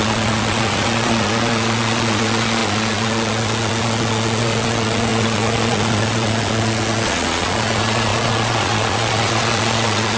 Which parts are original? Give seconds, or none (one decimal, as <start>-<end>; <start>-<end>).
none

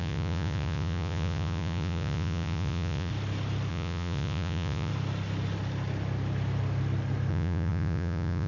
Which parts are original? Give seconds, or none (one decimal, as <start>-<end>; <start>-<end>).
3.1-3.7; 4.9-7.3

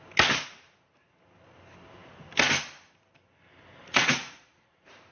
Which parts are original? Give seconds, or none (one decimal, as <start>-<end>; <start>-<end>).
0.0-3.8

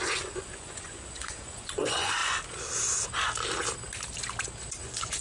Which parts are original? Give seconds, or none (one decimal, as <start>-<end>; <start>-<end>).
2.2-4.8

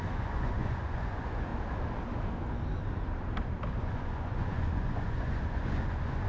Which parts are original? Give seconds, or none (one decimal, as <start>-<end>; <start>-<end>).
1.5-3.8

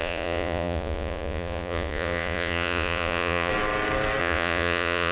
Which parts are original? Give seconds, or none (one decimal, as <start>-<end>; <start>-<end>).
3.5-4.2